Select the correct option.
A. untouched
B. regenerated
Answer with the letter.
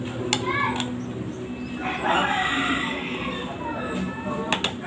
A